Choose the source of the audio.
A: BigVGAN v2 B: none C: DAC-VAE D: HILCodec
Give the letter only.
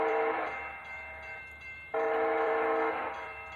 A